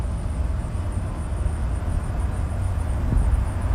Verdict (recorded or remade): recorded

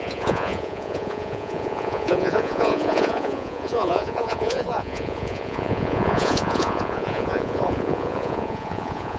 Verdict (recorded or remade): remade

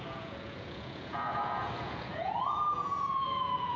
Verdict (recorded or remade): remade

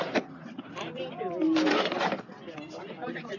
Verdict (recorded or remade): recorded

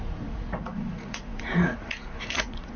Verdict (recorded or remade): remade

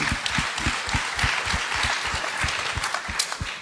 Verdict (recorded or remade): recorded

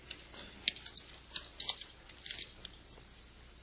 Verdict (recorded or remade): recorded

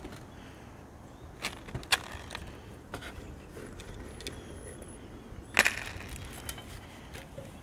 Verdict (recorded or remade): recorded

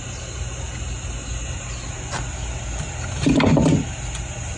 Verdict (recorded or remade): recorded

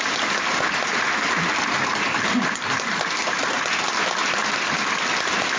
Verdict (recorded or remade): recorded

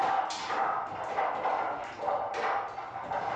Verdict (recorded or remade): recorded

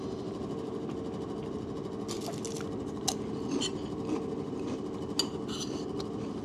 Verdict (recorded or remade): recorded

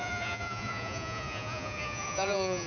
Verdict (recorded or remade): remade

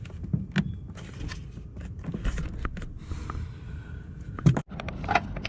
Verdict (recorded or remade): recorded